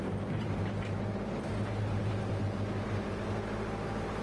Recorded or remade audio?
recorded